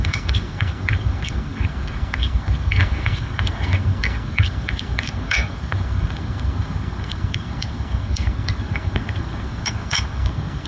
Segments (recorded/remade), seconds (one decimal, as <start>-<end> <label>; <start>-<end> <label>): 0.0-10.7 remade